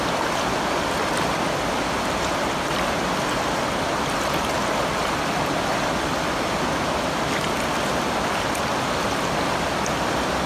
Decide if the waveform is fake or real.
real